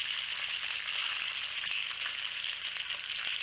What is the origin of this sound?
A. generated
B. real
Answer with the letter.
B